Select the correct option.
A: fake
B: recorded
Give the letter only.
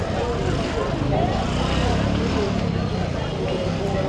B